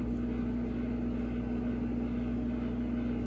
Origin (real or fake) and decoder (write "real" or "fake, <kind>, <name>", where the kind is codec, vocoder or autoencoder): real